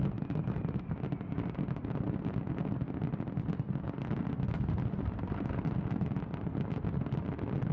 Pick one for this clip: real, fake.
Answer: real